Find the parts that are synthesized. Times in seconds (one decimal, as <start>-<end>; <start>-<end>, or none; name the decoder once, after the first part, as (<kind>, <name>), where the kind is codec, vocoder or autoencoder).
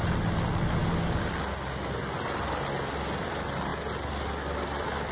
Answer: none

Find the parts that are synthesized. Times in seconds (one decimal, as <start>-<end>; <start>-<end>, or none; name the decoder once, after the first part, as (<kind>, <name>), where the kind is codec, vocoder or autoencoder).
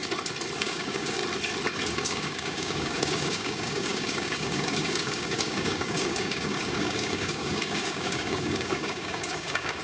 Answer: 0.6-1.2 (codec, DAC); 1.9-9.8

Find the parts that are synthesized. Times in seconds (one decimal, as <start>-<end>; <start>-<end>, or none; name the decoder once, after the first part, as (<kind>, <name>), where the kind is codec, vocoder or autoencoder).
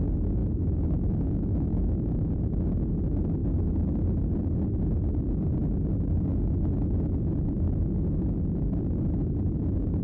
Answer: 0.4-2.3 (autoencoder, DAC-VAE)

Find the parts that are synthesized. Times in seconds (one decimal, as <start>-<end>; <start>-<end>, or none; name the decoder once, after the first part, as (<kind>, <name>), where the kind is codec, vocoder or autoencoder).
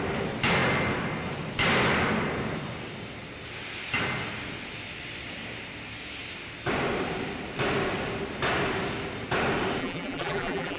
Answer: 9.8-10.8 (vocoder, BigVGAN v2)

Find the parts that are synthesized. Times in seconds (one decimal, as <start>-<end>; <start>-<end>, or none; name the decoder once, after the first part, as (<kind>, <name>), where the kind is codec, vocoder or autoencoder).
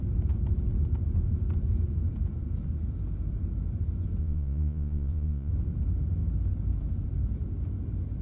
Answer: 4.2-5.5 (vocoder, Vocos)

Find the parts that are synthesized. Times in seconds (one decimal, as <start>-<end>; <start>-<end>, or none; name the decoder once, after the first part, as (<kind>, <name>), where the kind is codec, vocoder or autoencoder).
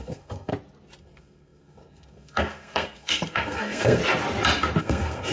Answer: 0.0-0.5 (codec, SNAC); 1.0-4.0; 4.8-5.3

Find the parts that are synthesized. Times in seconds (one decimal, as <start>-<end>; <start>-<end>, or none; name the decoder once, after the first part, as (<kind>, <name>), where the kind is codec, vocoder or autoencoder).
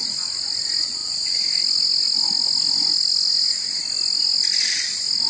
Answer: none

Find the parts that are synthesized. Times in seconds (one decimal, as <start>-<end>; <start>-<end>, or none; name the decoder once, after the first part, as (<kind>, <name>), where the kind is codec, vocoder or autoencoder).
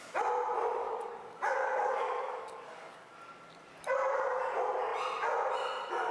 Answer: 0.8-3.1 (codec, DAC)